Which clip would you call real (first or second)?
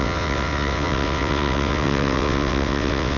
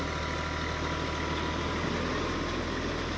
second